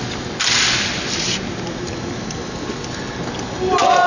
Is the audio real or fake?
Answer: real